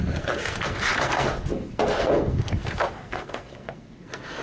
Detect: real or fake fake